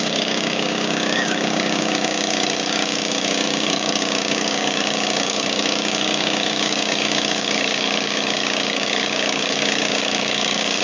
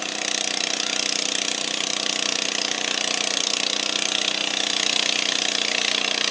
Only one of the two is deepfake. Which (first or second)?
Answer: first